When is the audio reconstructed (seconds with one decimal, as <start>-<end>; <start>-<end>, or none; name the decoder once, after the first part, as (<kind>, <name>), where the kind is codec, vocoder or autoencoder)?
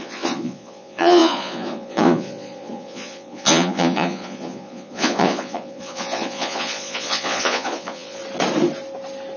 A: 0.0-8.2 (vocoder, Vocos)